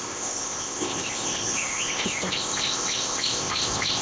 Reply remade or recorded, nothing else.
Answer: remade